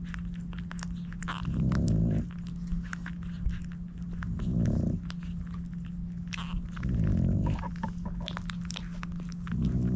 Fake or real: real